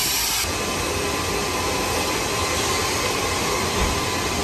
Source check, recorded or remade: recorded